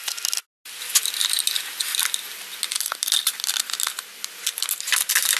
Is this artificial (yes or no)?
no